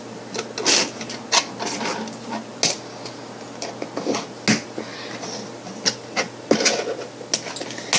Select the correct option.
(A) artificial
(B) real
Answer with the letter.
B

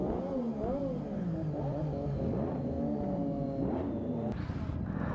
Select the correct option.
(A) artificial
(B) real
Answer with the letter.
B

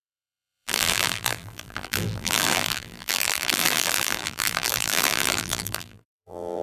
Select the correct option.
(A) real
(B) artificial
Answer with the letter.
B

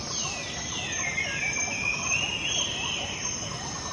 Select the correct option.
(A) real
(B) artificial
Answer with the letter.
A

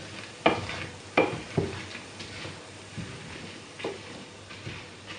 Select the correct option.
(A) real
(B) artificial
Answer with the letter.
A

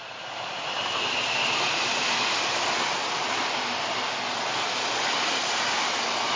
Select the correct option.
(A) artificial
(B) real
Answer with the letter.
B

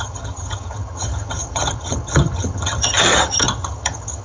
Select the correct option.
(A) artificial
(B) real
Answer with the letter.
A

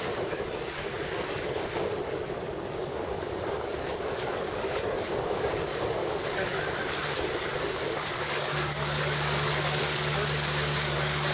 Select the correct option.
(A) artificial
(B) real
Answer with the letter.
A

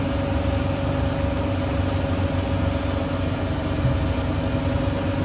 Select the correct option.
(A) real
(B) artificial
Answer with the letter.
A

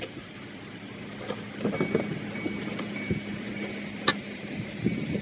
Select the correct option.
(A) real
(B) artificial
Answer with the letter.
A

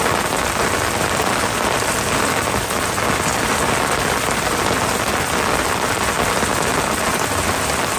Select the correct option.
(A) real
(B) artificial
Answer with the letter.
A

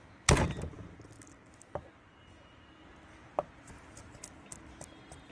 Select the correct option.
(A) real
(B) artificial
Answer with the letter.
A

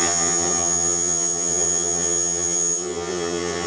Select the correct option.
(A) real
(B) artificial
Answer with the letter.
B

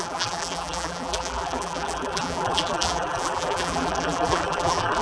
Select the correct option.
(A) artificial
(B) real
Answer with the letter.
A